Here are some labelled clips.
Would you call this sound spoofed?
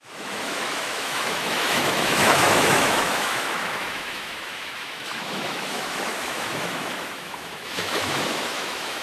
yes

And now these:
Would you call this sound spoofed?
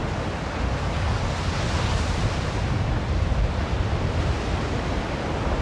no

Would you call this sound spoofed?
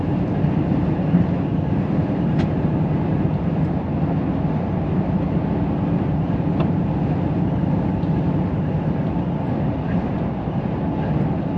no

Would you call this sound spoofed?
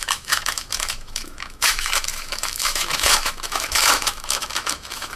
yes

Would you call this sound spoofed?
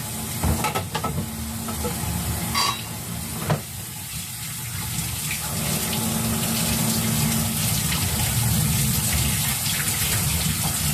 no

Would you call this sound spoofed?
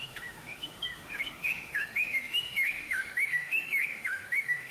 yes